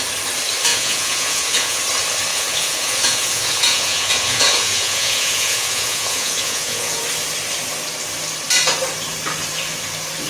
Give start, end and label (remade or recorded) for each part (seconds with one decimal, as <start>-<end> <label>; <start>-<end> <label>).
0.0-0.7 recorded; 0.7-1.8 remade; 1.8-2.3 recorded; 2.3-7.0 remade; 7.0-10.3 recorded